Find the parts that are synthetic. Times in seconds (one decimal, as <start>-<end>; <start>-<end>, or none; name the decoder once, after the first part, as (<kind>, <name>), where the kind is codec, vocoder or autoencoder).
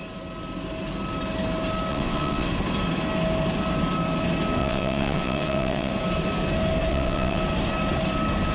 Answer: 1.9-2.5 (vocoder, WaveNeXt); 4.6-5.9; 6.9-7.4